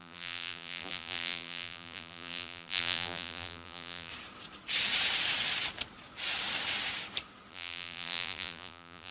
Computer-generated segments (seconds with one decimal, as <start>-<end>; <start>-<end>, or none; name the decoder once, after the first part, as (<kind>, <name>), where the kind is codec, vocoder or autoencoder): 0.0-4.1 (vocoder, BigVGAN v2); 7.5-9.1